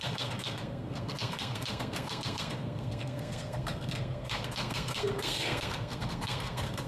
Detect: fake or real fake